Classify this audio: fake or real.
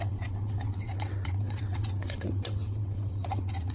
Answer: fake